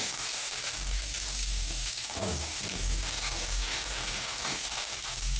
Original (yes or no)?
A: no